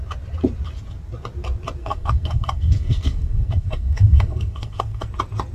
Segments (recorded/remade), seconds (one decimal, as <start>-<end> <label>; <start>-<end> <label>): 0.0-1.8 recorded; 1.8-5.1 remade; 5.1-5.5 recorded